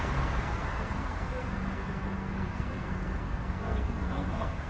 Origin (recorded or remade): remade